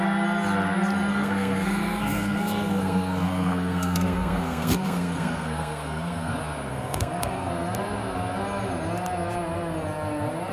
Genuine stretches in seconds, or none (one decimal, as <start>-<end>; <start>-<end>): 0.0-1.1; 6.3-6.7; 7.5-10.5